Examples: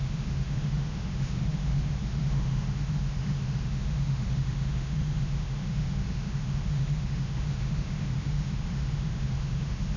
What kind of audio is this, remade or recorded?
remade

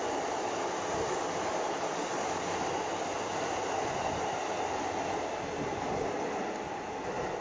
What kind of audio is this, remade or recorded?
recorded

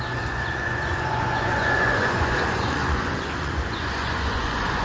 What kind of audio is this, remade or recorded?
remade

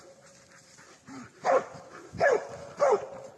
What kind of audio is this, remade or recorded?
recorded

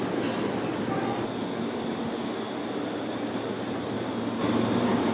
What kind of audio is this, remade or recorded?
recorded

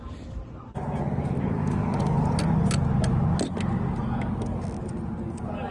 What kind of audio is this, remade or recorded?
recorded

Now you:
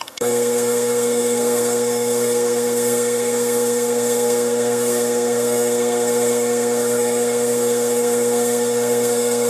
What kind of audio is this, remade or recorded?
remade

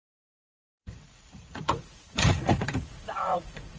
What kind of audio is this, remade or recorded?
remade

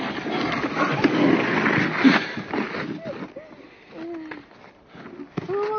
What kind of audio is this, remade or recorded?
recorded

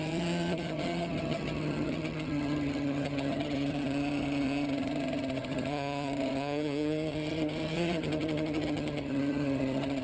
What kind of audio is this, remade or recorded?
remade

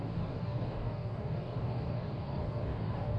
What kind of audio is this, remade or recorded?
remade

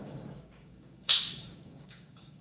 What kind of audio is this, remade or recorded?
remade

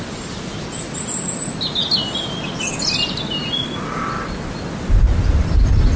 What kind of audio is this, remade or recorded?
recorded